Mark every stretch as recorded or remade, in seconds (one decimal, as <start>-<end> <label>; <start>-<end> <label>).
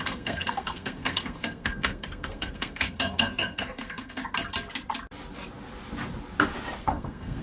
0.0-4.2 remade; 4.2-6.8 recorded; 6.8-7.4 remade